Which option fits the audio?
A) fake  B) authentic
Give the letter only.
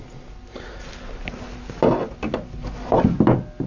B